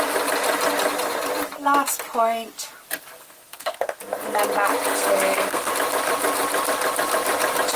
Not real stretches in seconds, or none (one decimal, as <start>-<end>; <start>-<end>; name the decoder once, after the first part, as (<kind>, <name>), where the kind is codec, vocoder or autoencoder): 3.2-4.0 (codec, SNAC); 4.9-5.7